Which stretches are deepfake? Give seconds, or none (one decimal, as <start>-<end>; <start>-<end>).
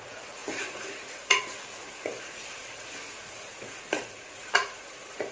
0.0-5.3